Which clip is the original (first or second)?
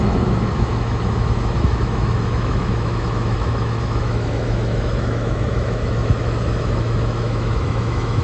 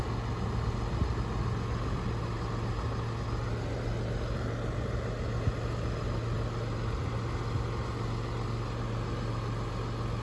second